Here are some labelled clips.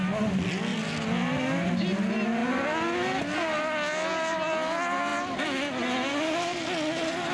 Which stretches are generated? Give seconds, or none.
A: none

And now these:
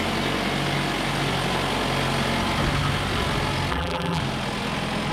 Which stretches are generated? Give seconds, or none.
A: 3.7-4.2 (vocoder, BigVGAN v2)